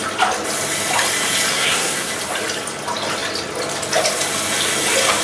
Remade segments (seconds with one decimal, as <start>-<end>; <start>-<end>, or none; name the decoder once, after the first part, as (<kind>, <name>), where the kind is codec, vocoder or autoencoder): 1.5-2.1 (codec, SNAC)